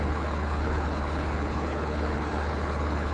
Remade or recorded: remade